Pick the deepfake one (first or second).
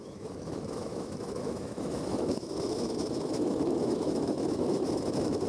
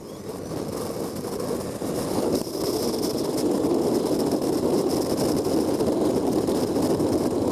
first